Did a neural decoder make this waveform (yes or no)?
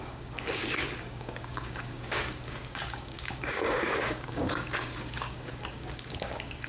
yes